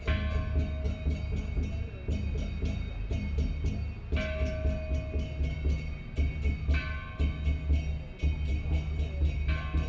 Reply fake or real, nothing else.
real